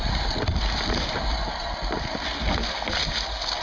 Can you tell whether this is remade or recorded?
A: recorded